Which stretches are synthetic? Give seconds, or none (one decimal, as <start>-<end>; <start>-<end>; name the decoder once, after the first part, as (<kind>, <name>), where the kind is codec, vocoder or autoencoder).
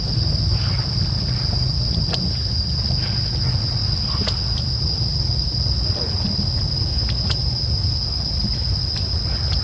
none